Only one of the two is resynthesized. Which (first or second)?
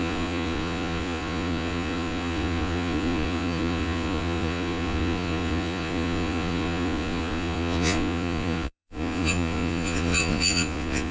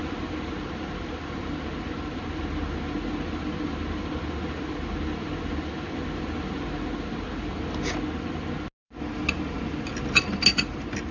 first